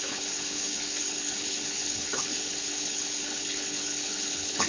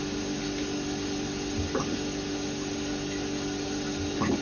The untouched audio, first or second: second